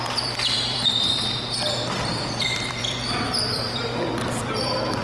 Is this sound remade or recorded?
remade